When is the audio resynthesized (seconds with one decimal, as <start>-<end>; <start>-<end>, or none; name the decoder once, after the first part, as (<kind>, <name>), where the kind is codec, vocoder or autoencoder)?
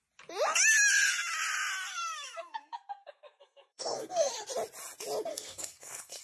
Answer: 1.9-4.3 (codec, SNAC); 5.3-6.2